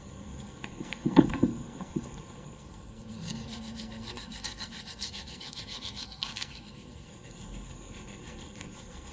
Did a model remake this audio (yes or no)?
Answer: yes